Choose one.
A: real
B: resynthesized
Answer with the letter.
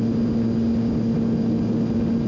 A